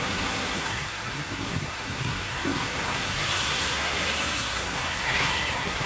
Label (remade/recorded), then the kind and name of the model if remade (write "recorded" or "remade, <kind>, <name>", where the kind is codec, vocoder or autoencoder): remade, codec, SNAC